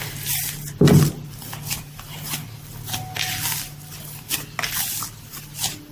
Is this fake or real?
real